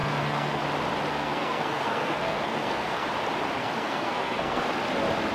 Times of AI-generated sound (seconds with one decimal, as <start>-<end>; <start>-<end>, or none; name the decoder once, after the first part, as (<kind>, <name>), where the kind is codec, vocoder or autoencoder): 0.0-0.6 (codec, SNAC); 1.1-3.1; 3.6-4.6